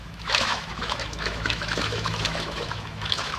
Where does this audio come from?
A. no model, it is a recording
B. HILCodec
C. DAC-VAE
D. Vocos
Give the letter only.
C